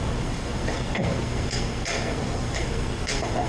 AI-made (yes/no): yes